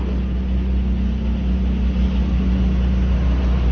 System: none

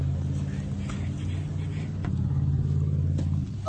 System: none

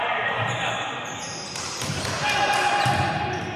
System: vocoder, BigVGAN v2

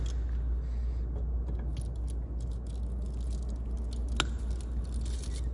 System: none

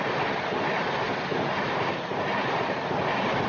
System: none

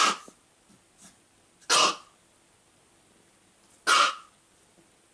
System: none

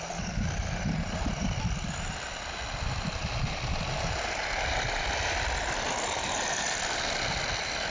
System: vocoder, BigVGAN v2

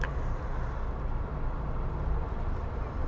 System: none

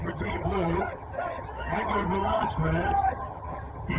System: vocoder, HiFi-GAN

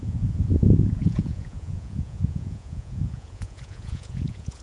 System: vocoder, Vocos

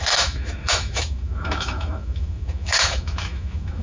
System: autoencoder, DAC-VAE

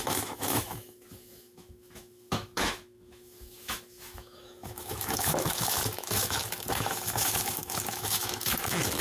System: autoencoder, DAC-VAE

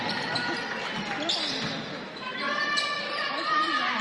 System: vocoder, BigVGAN v2